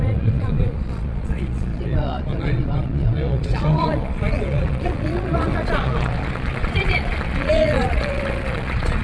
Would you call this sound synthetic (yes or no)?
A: yes